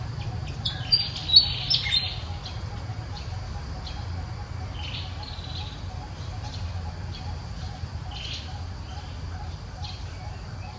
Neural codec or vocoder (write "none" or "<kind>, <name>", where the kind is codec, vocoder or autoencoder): none